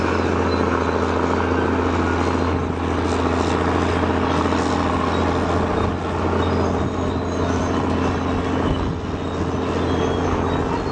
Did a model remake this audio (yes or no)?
no